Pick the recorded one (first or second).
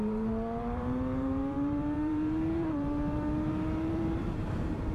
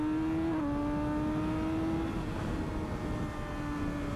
second